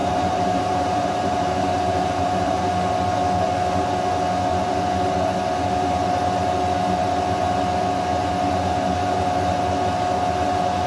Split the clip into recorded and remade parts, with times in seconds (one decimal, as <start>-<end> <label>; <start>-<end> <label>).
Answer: 0.0-2.7 remade; 2.7-10.9 recorded